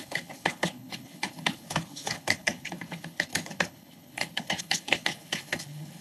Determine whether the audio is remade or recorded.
remade